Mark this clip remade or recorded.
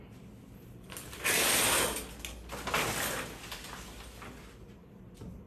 recorded